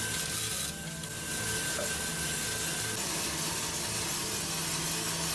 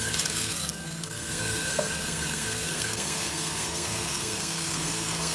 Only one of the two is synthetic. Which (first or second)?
second